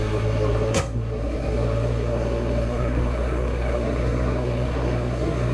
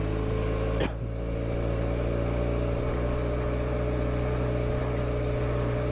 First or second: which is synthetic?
first